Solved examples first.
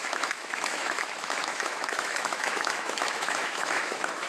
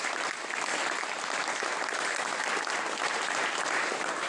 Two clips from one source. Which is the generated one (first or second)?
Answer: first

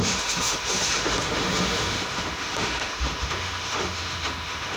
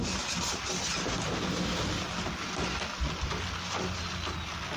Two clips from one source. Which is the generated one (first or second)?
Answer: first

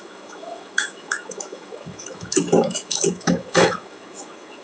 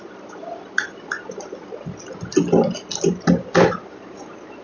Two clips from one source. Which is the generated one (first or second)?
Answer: first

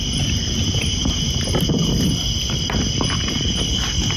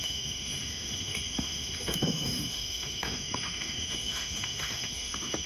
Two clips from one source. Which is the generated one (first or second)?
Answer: second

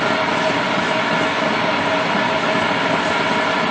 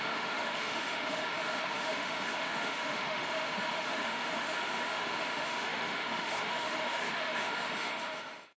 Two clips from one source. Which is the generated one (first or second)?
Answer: second